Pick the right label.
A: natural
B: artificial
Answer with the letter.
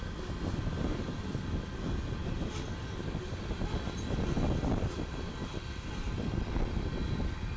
A